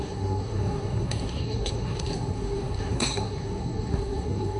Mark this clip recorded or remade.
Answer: remade